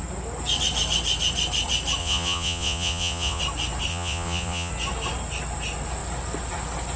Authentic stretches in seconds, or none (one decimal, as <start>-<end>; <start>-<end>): 0.0-2.0; 3.4-3.9; 4.7-7.0